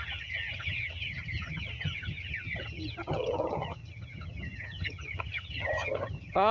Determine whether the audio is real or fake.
fake